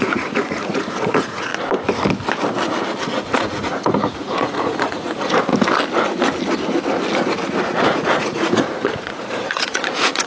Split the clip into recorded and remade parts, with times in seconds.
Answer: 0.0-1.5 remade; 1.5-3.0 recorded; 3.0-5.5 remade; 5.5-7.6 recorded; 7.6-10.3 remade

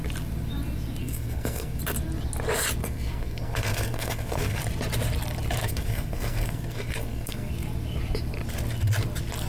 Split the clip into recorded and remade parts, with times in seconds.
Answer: 0.0-1.0 recorded; 1.0-1.8 remade; 1.8-2.8 recorded; 2.8-4.6 remade; 4.6-5.6 recorded; 5.6-7.5 remade; 7.5-9.5 recorded

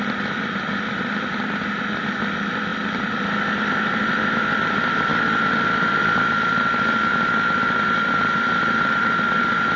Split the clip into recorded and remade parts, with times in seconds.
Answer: 0.0-9.8 remade

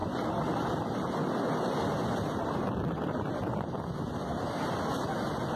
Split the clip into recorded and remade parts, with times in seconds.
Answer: 0.0-5.6 recorded

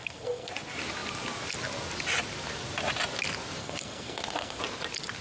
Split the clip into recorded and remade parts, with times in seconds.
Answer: 0.0-0.5 remade; 0.5-3.6 recorded; 3.6-4.6 remade; 4.6-5.2 recorded